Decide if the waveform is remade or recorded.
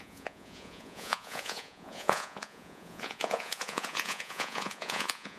remade